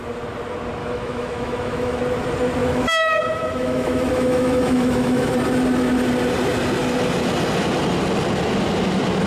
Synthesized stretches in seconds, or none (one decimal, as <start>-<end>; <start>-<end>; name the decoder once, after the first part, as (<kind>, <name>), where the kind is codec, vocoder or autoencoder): 0.8-2.0 (autoencoder, DAC-VAE); 2.6-5.3